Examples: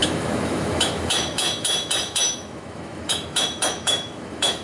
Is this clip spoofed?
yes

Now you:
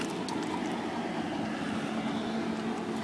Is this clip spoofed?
no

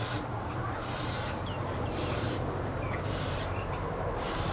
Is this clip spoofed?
yes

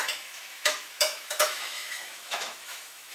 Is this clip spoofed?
yes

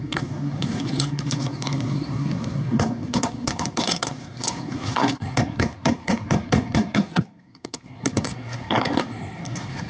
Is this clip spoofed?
yes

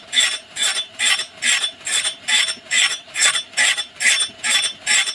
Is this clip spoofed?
yes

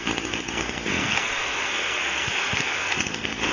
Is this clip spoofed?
yes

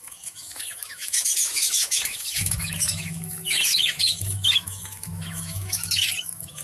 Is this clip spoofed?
yes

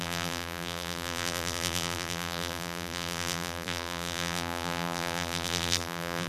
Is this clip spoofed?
yes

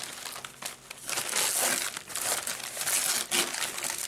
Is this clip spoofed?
no